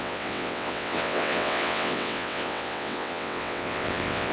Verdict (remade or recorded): remade